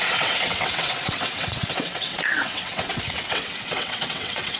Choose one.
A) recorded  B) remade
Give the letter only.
B